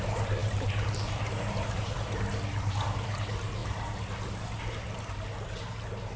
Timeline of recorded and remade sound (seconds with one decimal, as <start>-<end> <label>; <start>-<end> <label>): 0.0-0.4 recorded; 0.4-1.2 remade; 1.2-6.2 recorded